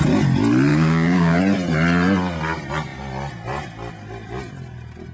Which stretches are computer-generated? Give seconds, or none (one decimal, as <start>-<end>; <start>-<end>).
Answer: 0.7-1.4